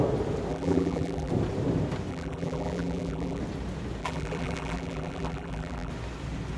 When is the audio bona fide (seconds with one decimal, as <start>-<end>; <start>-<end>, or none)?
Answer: 0.0-0.5; 1.3-2.1; 3.4-4.0; 5.9-6.6